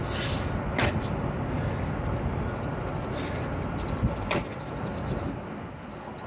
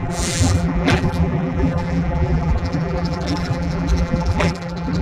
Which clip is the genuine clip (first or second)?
first